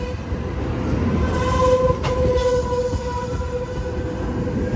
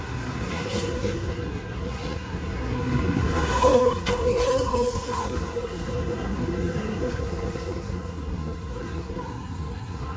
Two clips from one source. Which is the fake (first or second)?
second